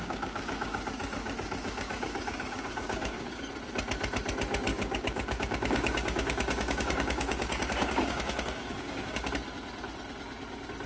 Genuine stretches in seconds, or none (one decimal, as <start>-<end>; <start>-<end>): 3.4-4.7; 9.3-10.9